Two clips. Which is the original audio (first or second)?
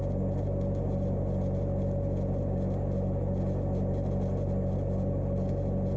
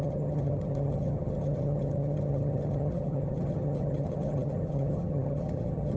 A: first